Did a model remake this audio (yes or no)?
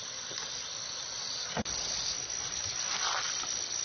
no